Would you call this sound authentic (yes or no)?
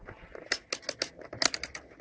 yes